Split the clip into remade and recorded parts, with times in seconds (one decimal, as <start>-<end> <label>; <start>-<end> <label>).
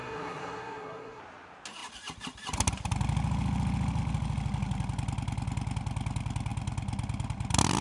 0.0-1.2 remade; 1.2-7.8 recorded